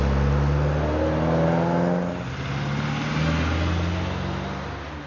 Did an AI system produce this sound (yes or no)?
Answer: no